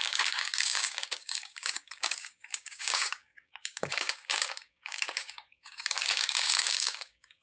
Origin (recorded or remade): remade